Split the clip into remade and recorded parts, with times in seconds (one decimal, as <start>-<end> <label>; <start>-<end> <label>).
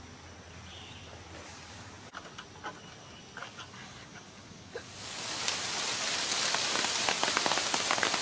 0.0-1.5 recorded; 1.5-2.1 remade; 2.1-3.4 recorded; 3.4-5.4 remade; 5.4-8.2 recorded